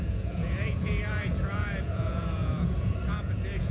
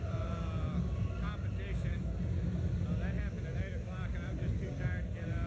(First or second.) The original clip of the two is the second